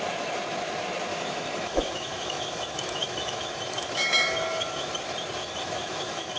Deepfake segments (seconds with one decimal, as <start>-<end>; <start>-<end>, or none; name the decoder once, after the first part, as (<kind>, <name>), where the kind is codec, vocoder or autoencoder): 1.1-4.9 (autoencoder, DAC-VAE); 5.4-6.4